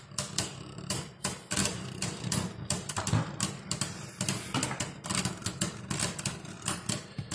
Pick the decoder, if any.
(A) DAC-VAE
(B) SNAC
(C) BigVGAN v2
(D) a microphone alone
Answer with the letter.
C